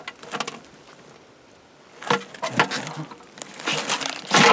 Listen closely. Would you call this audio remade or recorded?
recorded